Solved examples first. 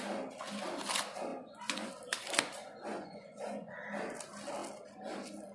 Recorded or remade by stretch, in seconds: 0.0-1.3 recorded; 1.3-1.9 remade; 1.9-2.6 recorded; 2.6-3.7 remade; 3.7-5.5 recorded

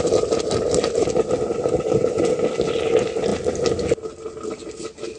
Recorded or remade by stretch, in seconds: 0.0-5.2 recorded

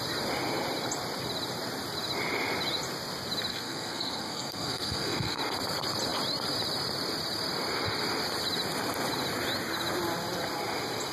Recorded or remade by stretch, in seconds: 0.0-3.5 recorded; 3.5-5.4 remade; 5.4-11.1 recorded